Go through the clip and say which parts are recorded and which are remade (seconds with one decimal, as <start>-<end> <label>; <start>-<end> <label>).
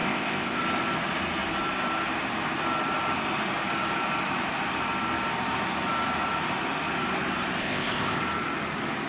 0.0-0.6 remade; 0.6-7.6 recorded; 7.6-8.2 remade; 8.2-9.1 recorded